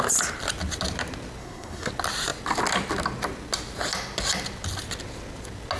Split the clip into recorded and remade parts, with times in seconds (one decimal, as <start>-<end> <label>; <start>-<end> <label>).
0.0-1.4 recorded; 1.4-1.9 remade; 1.9-5.8 recorded